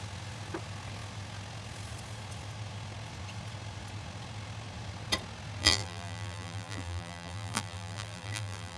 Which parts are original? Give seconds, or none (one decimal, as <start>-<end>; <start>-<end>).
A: 0.0-5.6